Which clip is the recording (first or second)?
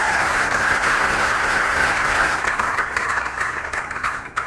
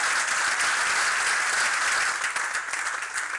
second